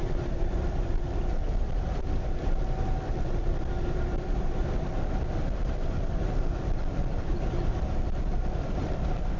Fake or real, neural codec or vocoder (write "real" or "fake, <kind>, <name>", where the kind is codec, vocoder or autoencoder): fake, vocoder, BigVGAN v2